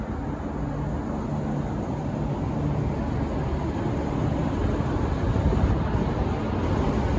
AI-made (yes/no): no